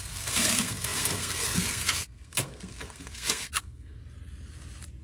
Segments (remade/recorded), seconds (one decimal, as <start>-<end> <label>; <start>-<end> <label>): 0.0-4.0 remade; 4.0-5.0 recorded